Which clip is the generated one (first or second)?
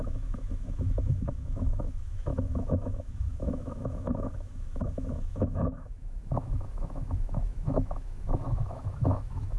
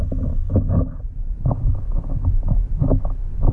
first